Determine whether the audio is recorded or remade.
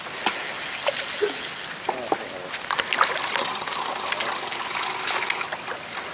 recorded